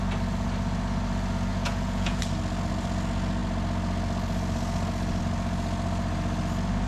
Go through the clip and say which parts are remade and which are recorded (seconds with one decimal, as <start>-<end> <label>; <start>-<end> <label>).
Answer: 0.0-1.5 recorded; 1.5-2.2 remade; 2.2-6.9 recorded